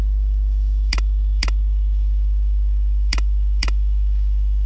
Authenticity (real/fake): fake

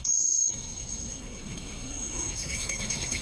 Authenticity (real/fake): fake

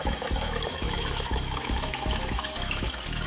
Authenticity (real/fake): fake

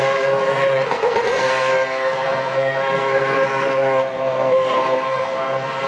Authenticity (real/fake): fake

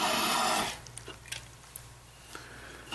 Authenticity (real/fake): fake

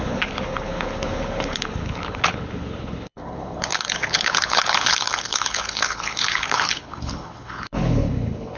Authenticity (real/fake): fake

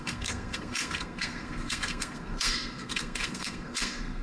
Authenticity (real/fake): fake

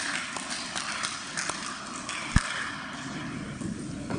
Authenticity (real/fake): real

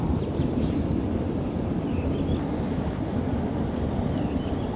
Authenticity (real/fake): real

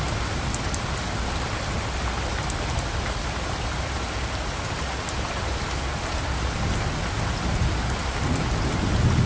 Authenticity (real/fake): real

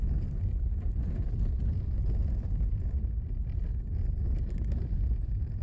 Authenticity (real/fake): real